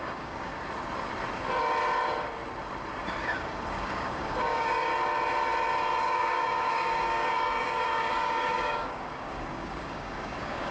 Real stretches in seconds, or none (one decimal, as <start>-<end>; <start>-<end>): 0.5-3.3; 4.9-6.0

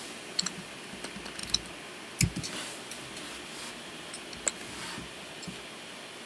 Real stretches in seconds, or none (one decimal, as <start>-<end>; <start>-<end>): 0.0-6.3

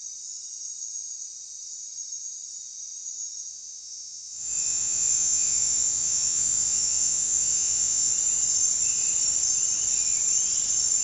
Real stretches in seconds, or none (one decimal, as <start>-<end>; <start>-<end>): 0.0-3.5; 8.1-11.0

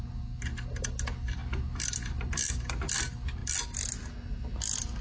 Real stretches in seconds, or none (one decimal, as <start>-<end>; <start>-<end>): 0.0-5.0

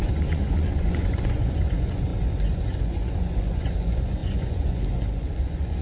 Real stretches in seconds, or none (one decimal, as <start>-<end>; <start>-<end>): none

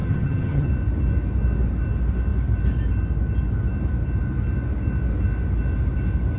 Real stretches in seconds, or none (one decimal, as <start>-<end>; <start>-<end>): 0.7-6.4

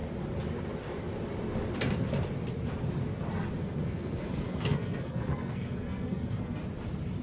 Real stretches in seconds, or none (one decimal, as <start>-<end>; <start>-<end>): 0.0-3.6; 6.6-7.2